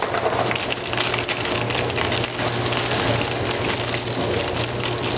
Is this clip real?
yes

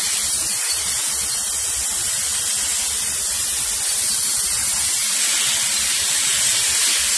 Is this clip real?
yes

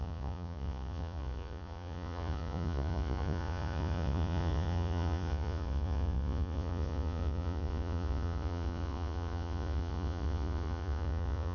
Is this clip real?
no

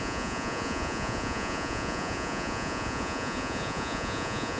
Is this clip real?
no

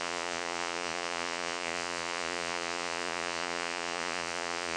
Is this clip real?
no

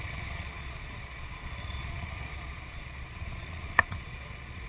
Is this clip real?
no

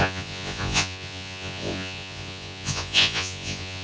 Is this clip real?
no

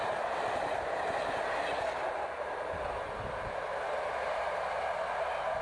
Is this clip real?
yes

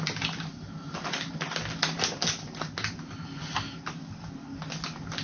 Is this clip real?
yes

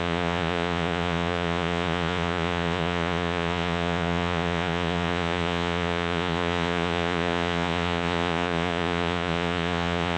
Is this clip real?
no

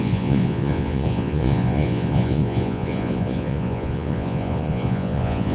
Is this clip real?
no